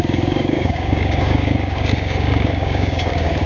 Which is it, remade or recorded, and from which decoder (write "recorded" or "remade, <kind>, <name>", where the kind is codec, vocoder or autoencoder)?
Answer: remade, codec, DAC